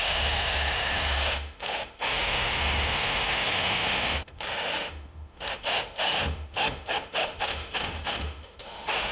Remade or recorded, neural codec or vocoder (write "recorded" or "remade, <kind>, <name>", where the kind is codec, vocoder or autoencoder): remade, autoencoder, DAC-VAE